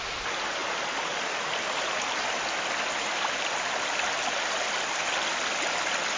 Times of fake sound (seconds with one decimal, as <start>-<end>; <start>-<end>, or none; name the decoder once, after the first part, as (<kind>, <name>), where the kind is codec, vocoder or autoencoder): none

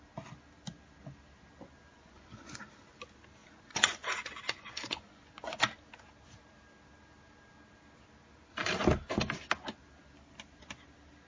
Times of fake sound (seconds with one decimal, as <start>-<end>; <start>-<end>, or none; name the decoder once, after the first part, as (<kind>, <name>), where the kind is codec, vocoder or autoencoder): 1.9-2.6 (vocoder, Vocos); 3.4-5.6